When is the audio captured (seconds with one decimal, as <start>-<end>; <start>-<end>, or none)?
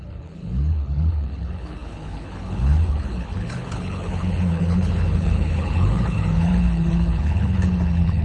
none